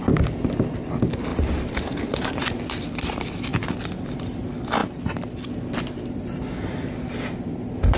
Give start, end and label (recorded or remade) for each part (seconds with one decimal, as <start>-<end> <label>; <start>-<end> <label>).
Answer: 0.0-1.3 recorded; 1.3-2.4 remade; 2.4-8.0 recorded